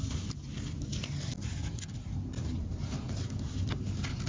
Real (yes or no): yes